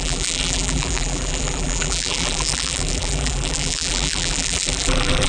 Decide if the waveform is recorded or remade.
remade